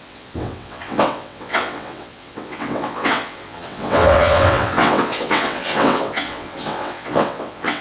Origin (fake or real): fake